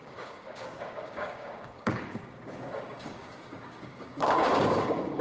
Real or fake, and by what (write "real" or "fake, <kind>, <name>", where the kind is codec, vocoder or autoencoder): fake, codec, DAC